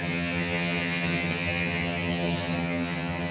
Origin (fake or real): fake